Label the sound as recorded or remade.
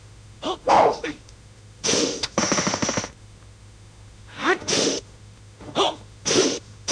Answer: remade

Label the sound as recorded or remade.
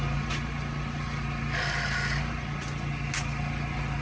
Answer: recorded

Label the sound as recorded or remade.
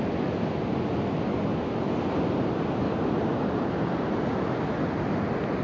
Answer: recorded